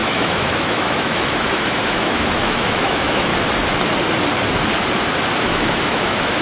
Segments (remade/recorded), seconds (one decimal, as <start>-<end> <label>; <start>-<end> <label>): 0.0-3.3 remade; 3.3-5.4 recorded; 5.4-6.4 remade